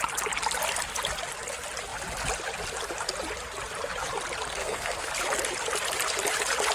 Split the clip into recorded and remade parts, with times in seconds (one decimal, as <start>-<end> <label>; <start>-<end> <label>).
0.0-4.5 recorded; 4.5-5.1 remade; 5.1-6.7 recorded